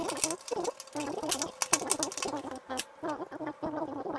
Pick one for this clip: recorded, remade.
recorded